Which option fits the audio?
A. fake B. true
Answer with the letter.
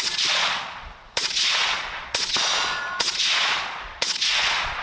A